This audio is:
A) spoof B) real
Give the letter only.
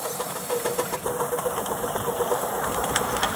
A